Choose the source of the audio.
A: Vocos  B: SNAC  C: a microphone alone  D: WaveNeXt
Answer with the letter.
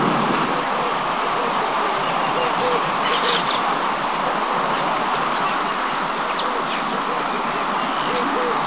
C